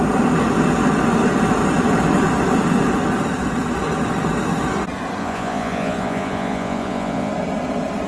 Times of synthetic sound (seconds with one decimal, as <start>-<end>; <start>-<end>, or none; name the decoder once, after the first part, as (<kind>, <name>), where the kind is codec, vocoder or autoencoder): 5.2-7.3 (vocoder, Vocos)